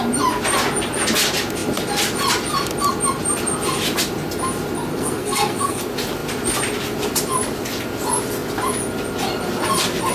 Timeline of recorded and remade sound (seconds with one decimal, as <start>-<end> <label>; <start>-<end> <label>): 0.0-4.9 recorded; 4.9-5.8 remade; 5.8-10.1 recorded